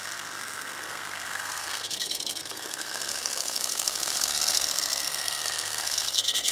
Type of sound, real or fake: fake